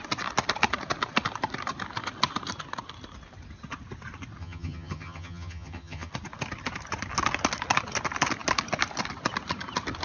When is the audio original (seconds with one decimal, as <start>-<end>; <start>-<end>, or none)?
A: 0.0-4.4; 6.1-10.0